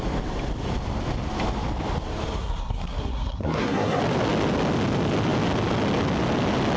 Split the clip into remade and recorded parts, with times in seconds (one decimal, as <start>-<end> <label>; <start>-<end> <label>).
0.0-2.4 recorded; 2.4-4.0 remade; 4.0-6.8 recorded